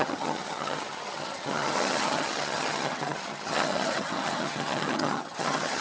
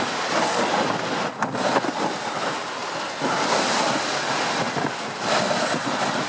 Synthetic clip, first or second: first